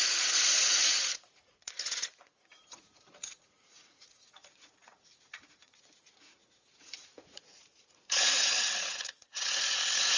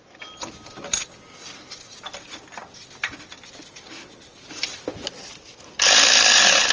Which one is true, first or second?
second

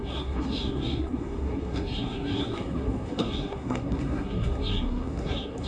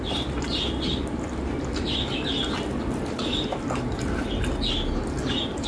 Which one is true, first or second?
second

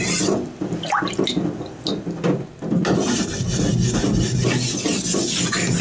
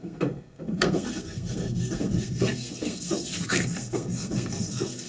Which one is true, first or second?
first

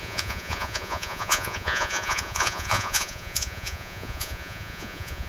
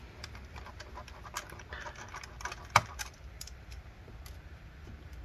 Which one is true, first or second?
second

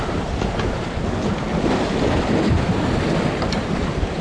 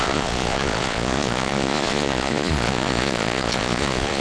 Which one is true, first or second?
first